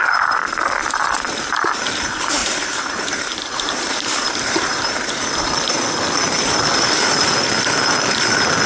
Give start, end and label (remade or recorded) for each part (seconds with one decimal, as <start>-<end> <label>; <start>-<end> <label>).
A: 0.0-2.4 recorded; 2.4-5.2 remade; 5.2-8.7 recorded